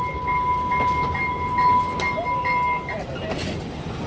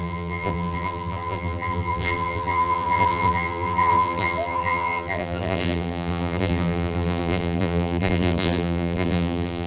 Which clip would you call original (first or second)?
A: first